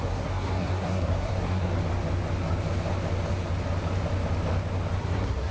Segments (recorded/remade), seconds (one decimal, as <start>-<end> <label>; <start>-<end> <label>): 0.0-1.7 remade; 1.7-5.0 recorded; 5.0-5.5 remade